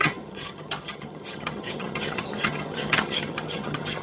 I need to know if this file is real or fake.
fake